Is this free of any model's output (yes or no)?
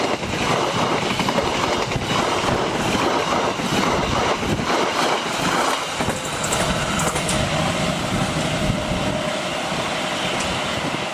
yes